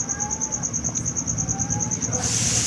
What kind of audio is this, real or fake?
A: real